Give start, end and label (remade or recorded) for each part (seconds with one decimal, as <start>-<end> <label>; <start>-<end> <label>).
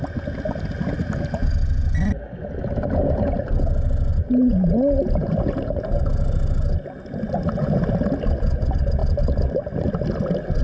0.0-10.6 recorded